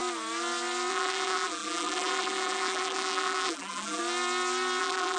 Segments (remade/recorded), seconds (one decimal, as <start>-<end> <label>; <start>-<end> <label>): 0.0-0.9 recorded; 0.9-4.0 remade; 4.0-4.8 recorded; 4.8-5.2 remade